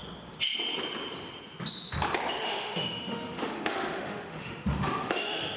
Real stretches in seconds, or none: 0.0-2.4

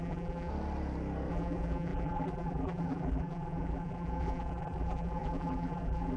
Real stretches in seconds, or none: 0.5-1.3

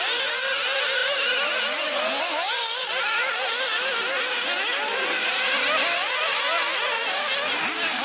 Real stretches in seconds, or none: 0.0-8.0

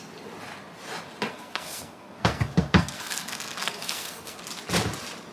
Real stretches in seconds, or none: 0.0-1.3; 4.4-5.3

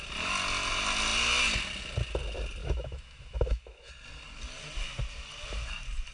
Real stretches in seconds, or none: 0.0-2.6; 3.9-6.1